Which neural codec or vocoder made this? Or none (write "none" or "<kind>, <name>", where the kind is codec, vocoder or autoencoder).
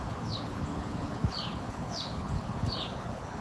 codec, HILCodec